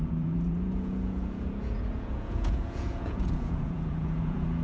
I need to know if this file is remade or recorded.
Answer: remade